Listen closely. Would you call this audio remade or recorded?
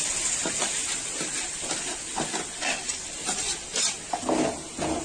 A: recorded